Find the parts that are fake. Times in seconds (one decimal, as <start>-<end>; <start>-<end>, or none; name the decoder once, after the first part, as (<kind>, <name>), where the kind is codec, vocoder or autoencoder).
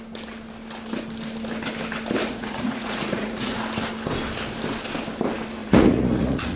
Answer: 2.3-3.6 (vocoder, Vocos); 5.6-6.6